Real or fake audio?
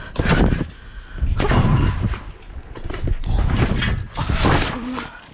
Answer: real